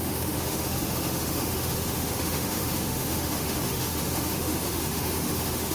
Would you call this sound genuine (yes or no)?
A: no